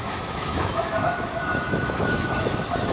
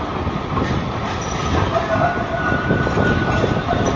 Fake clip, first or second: first